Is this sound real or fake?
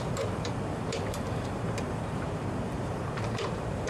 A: fake